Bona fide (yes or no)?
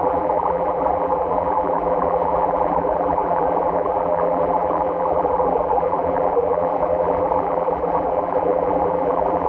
no